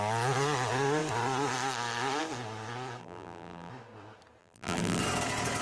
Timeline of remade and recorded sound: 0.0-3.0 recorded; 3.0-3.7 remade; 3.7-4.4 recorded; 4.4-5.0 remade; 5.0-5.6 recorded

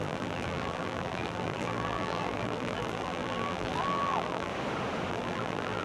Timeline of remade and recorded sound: 0.0-4.5 remade; 4.5-5.1 recorded; 5.1-5.8 remade

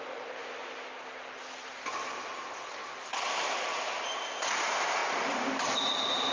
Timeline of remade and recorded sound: 0.0-0.4 recorded; 0.4-1.0 remade; 1.0-2.8 recorded; 2.8-4.0 remade; 4.0-6.3 recorded

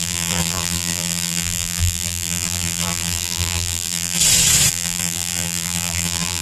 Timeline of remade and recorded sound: 0.0-4.2 remade; 4.2-4.7 recorded; 4.7-6.4 remade

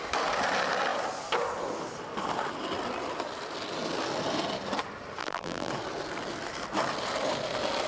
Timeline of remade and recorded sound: 0.0-5.2 recorded; 5.2-5.7 remade; 5.7-7.9 recorded

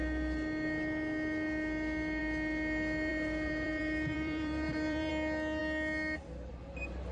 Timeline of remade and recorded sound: 0.0-3.1 recorded; 3.1-5.1 remade; 5.1-7.1 recorded

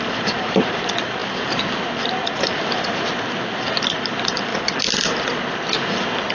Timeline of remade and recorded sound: 0.0-4.5 remade; 4.5-5.5 recorded; 5.5-6.3 remade